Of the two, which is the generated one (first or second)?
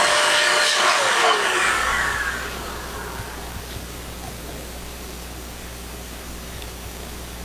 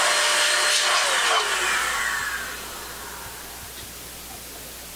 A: first